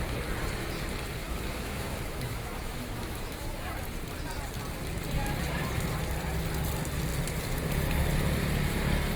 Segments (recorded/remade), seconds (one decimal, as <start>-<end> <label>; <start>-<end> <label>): 0.0-1.2 recorded; 1.2-3.7 remade; 3.7-9.2 recorded